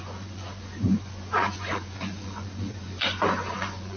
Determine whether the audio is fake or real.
fake